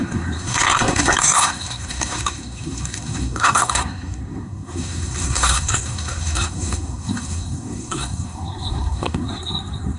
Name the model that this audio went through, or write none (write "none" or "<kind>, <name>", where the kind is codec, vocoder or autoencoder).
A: codec, SNAC